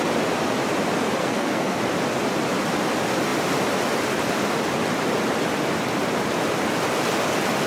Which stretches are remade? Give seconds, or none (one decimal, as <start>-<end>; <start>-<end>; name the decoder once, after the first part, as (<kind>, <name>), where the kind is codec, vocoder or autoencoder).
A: 1.2-1.8 (codec, SNAC)